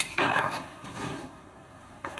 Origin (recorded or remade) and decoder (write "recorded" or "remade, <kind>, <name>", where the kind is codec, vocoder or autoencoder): remade, codec, SNAC